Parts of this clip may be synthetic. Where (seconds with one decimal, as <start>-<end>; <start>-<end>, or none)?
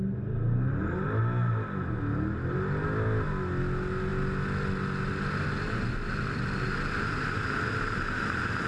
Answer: none